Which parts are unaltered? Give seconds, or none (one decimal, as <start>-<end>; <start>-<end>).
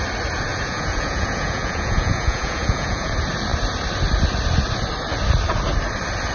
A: 0.0-0.5; 3.1-6.3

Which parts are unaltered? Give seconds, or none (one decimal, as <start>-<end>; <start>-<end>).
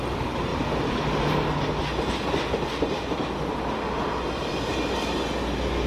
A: 0.0-5.9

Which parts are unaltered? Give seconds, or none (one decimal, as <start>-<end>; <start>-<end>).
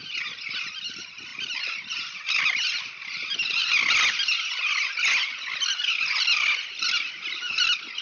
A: 0.0-8.0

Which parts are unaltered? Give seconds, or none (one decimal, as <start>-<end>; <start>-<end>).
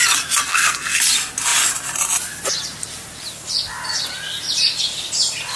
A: 0.0-0.4; 1.0-5.6